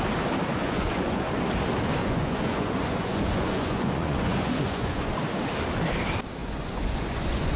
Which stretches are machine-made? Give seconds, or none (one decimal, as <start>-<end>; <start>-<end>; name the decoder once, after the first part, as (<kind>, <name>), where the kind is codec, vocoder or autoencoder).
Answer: 0.6-1.4 (vocoder, Vocos); 2.0-5.1; 6.4-7.6